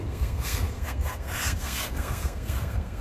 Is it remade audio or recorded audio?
remade